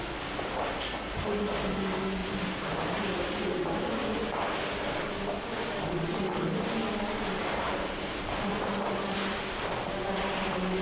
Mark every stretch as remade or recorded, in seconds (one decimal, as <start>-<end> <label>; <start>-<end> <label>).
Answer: 0.0-2.2 recorded; 2.2-3.9 remade; 3.9-6.8 recorded; 6.8-9.8 remade; 9.8-10.8 recorded